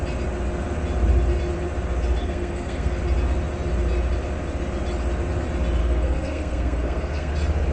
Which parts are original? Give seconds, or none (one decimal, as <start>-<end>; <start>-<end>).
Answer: 0.0-2.2; 3.0-5.8; 7.3-7.7